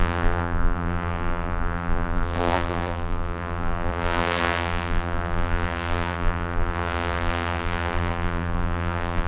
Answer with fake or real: fake